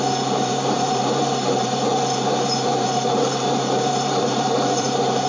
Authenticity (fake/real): fake